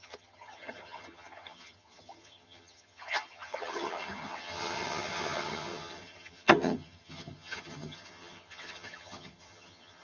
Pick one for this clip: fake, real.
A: fake